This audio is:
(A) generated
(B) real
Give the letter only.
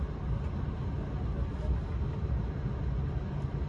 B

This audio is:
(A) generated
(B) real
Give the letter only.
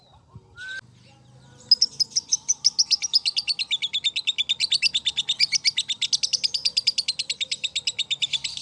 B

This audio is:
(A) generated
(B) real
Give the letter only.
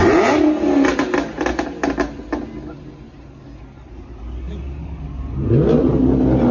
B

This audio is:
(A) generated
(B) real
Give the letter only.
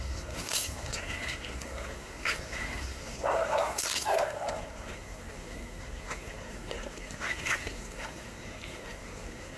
A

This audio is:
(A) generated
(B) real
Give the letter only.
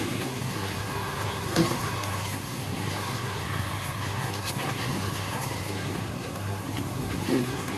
A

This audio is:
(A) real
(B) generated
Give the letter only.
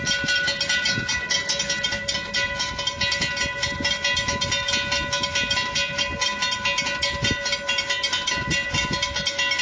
A